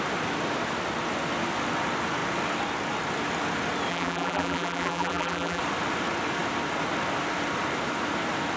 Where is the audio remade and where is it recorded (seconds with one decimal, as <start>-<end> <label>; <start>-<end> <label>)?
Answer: 0.0-3.9 recorded; 3.9-5.6 remade; 5.6-8.6 recorded